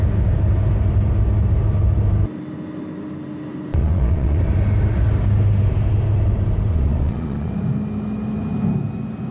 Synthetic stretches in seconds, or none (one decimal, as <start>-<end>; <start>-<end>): 3.7-4.4; 6.7-7.5